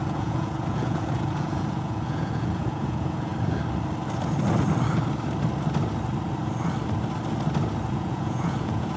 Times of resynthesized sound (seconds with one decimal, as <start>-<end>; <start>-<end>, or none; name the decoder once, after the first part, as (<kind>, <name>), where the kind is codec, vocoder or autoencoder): 0.0-3.3 (vocoder, Vocos); 7.9-9.0